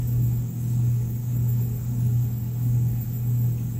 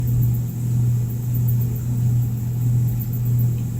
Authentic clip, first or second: second